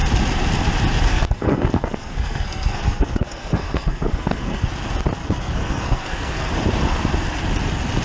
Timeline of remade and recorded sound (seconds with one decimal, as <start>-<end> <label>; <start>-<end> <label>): 0.0-1.1 recorded; 1.1-4.7 remade; 4.7-5.2 recorded; 5.2-6.5 remade; 6.5-8.0 recorded